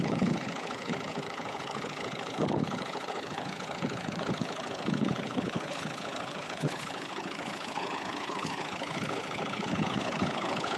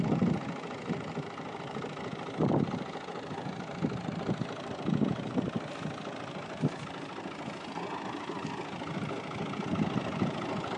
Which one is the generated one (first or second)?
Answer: first